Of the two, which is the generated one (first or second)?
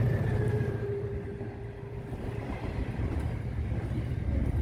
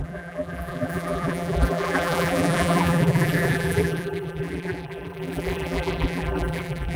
second